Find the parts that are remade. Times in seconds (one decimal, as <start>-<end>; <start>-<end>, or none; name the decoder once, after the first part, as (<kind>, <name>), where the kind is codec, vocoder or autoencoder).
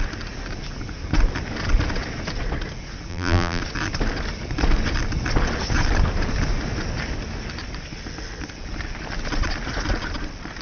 3.1-3.6 (vocoder, BigVGAN v2)